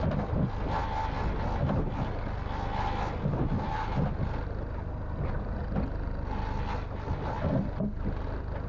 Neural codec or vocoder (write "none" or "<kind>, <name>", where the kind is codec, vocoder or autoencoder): none